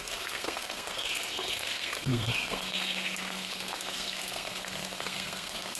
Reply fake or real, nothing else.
fake